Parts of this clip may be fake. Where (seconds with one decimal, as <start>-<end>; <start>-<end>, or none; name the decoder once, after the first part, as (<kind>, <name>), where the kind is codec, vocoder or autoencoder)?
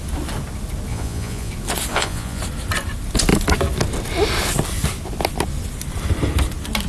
0.9-1.5 (vocoder, Vocos); 1.9-2.4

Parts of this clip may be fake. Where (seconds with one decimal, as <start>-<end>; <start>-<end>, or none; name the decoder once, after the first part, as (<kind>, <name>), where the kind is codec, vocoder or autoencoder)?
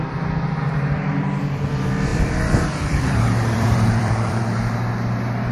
2.1-4.4 (vocoder, BigVGAN v2)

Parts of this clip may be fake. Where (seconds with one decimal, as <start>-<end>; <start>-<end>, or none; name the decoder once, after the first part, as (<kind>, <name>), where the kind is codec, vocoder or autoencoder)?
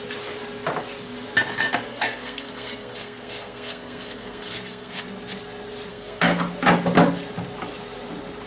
1.9-5.0 (codec, SNAC); 5.9-6.4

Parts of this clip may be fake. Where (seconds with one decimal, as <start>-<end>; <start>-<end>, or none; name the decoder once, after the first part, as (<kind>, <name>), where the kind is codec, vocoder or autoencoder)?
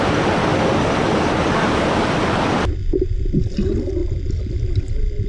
none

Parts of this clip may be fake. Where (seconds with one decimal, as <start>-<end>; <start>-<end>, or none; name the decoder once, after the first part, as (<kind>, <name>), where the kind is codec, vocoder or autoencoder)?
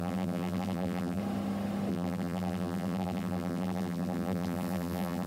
0.0-1.2 (vocoder, BigVGAN v2); 1.9-5.3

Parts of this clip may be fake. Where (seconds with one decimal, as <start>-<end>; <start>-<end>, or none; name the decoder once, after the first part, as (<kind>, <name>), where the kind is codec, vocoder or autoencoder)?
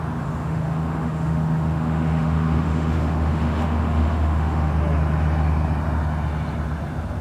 0.4-4.7 (autoencoder, DAC-VAE)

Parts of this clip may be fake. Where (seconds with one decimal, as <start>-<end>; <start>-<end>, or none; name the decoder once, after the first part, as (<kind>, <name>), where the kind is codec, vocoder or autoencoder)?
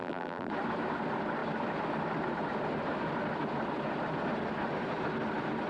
0.0-0.5 (vocoder, BigVGAN v2)